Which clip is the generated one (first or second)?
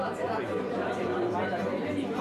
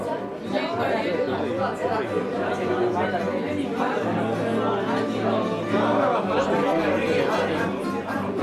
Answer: first